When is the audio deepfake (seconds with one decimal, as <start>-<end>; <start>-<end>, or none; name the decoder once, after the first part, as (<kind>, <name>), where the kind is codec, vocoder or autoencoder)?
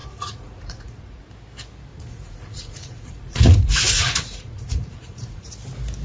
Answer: 0.0-1.2 (vocoder, Vocos); 1.9-5.5